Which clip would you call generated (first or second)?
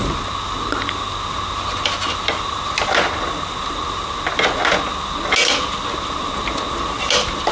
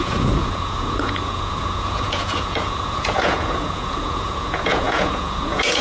second